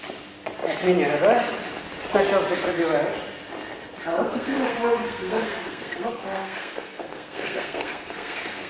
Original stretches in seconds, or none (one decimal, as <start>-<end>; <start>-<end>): 0.0-4.1